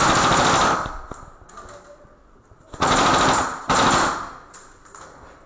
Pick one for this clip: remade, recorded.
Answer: recorded